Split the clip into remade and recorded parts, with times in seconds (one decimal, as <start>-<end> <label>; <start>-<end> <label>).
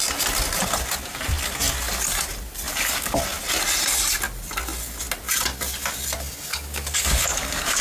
0.0-2.7 recorded; 2.7-3.2 remade; 3.2-6.5 recorded; 6.5-7.8 remade